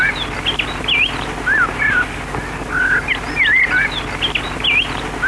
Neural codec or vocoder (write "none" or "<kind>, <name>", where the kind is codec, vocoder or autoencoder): none